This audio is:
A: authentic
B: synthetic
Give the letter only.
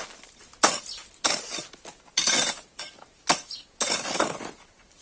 A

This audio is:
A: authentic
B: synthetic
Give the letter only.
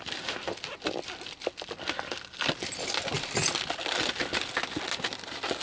A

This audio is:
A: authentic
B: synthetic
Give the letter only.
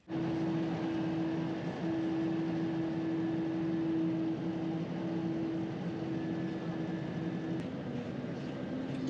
A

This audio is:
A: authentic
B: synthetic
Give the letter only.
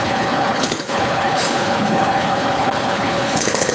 B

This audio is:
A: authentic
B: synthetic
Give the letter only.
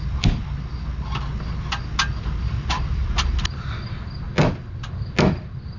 A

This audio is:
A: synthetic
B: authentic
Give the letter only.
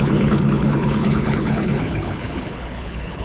A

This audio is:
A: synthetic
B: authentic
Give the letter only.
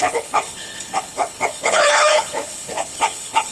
A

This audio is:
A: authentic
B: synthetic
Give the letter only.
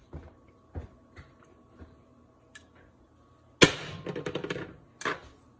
A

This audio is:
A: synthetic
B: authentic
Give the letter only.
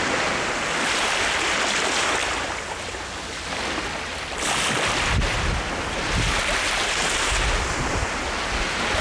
B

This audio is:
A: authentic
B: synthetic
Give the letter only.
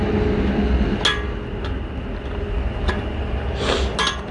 A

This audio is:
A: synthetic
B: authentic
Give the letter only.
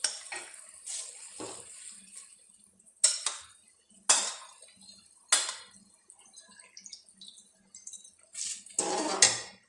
B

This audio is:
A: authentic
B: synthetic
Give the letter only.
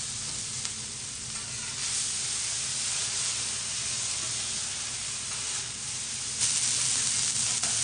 A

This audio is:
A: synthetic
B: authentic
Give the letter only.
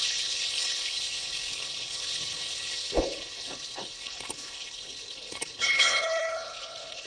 A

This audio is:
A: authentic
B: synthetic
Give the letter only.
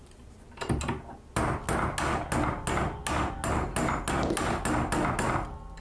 A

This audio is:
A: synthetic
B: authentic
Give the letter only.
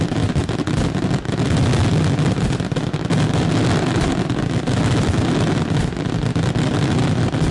B